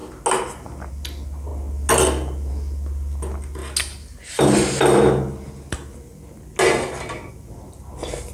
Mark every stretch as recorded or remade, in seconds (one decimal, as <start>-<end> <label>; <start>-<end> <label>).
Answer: 0.0-8.3 recorded

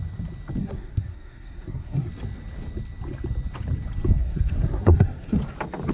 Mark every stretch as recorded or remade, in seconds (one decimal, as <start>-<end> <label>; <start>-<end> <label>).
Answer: 0.0-0.6 recorded; 0.6-2.1 remade; 2.1-4.2 recorded; 4.2-5.4 remade; 5.4-5.9 recorded

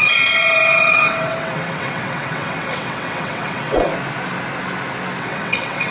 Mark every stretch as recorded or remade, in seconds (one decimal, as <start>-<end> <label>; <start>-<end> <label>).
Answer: 0.0-3.9 remade; 3.9-5.2 recorded; 5.2-5.9 remade

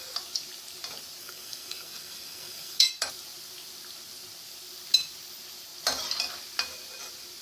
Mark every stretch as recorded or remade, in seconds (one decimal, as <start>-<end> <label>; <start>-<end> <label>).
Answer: 0.0-1.2 recorded; 1.2-2.9 remade; 2.9-7.4 recorded

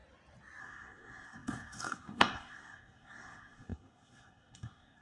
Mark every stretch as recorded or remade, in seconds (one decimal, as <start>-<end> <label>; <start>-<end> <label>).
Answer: 0.0-0.6 recorded; 0.6-5.0 remade

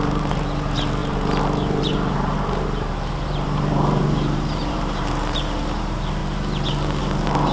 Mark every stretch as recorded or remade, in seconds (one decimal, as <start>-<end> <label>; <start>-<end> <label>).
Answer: 0.0-6.2 remade; 6.2-7.0 recorded; 7.0-7.5 remade